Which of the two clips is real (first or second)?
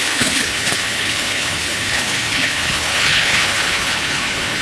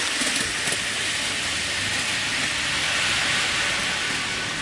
second